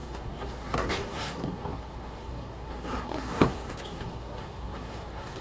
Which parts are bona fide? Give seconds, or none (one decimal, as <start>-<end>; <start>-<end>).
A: none

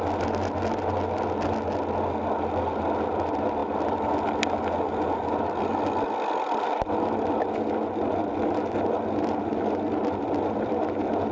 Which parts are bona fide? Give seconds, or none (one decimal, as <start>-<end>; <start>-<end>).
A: 0.0-11.3

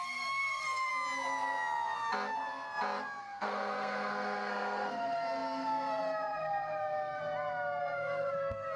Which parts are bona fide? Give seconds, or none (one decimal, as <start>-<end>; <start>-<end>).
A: 0.9-3.2; 7.2-7.8

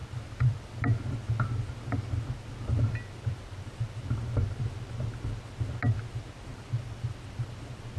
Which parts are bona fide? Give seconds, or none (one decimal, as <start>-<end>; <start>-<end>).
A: 0.0-8.0

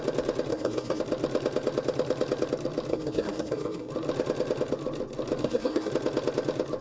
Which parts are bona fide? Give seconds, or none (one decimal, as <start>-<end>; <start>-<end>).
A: 0.0-0.5; 1.0-2.9; 3.9-5.4; 5.9-6.8

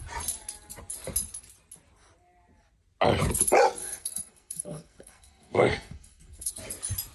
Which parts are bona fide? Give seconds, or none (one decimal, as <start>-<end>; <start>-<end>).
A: 0.0-3.8; 6.5-7.1

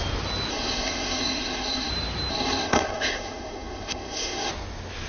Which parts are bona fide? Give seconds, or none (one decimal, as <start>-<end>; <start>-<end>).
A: 0.0-0.5; 1.9-2.3; 4.5-5.1